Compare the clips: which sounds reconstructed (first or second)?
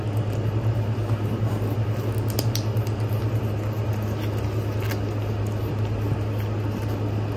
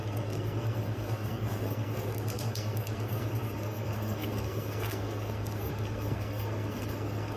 second